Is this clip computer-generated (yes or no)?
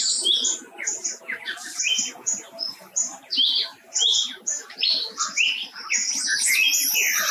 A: no